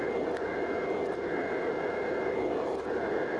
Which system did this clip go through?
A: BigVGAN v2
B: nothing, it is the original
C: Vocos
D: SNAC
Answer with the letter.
B